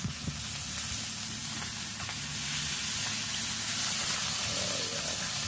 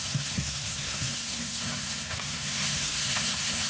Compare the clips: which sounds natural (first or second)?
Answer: first